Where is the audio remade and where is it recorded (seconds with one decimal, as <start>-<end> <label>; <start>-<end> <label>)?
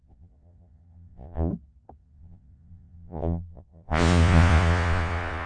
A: 0.0-1.5 remade; 1.5-2.0 recorded; 2.0-5.5 remade